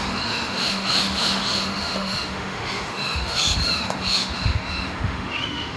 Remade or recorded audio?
remade